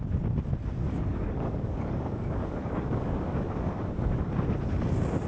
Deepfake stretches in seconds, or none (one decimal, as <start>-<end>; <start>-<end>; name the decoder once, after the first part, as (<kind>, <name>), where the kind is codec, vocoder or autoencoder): 1.1-4.3 (codec, DAC)